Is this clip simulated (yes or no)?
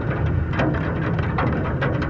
no